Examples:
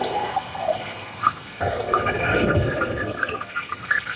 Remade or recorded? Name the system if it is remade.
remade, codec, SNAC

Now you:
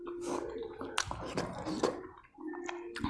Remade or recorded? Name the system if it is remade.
recorded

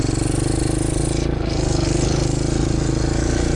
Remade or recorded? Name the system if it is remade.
recorded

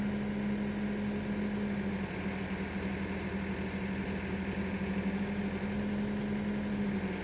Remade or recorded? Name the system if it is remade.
recorded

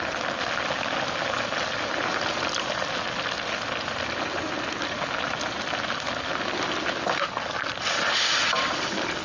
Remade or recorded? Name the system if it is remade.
recorded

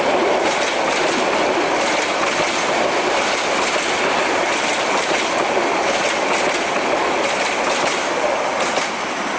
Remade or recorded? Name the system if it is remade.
recorded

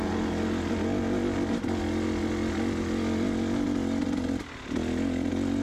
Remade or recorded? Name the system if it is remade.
recorded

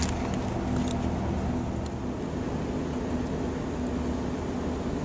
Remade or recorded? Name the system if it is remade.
recorded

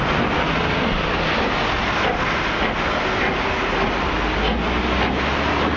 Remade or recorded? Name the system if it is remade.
recorded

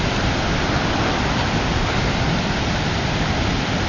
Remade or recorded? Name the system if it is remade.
remade, vocoder, BigVGAN v2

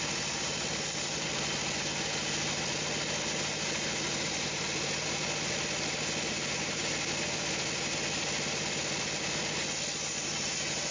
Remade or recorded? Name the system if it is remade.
recorded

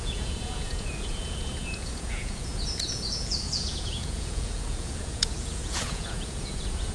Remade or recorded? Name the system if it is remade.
remade, vocoder, Vocos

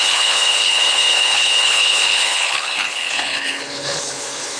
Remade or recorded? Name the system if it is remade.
remade, codec, HILCodec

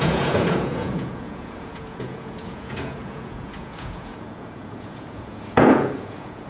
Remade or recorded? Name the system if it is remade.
remade, vocoder, Vocos